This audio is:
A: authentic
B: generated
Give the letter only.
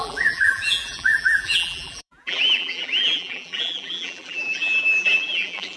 B